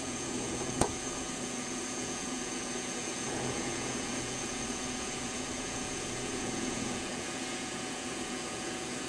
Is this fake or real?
fake